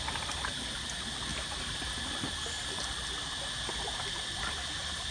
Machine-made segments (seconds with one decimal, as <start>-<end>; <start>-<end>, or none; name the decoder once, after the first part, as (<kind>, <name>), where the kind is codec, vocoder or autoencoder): none